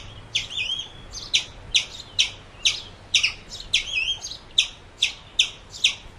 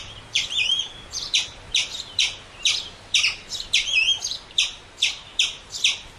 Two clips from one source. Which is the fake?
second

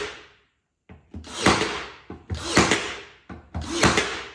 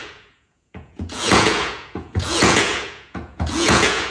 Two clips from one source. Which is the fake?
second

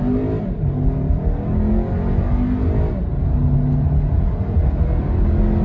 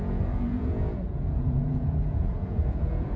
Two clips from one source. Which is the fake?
second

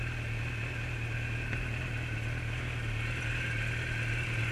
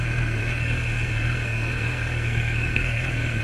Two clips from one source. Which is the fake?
second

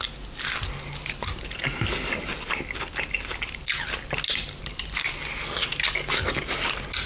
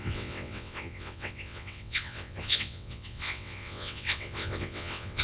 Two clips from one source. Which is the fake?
second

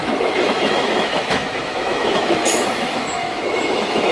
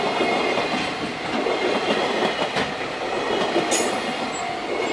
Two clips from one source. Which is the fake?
first